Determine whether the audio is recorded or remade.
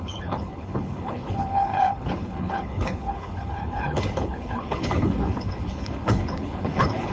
remade